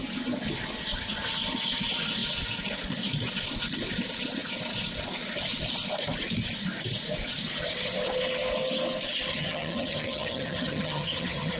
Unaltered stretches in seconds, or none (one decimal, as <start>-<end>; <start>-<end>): 0.0-9.3